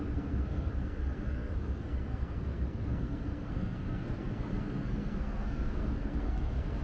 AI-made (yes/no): yes